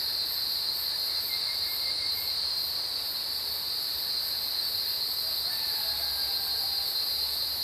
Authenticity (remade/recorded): recorded